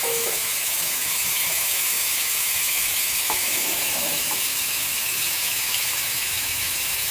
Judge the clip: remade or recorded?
remade